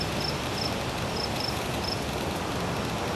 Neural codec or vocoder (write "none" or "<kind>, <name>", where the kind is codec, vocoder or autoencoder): none